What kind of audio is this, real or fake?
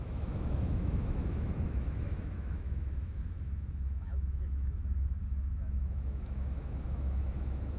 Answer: fake